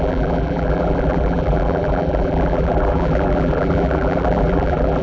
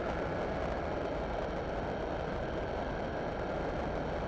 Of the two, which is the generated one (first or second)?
first